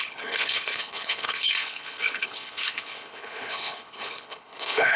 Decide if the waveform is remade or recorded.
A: remade